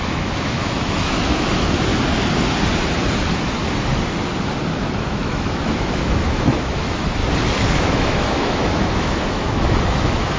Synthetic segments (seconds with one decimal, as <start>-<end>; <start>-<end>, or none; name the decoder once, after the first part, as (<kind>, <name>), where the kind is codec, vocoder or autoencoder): 0.0-1.9 (autoencoder, DAC-VAE); 5.0-7.2; 7.7-10.4